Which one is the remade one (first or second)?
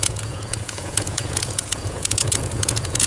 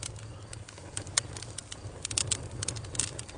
first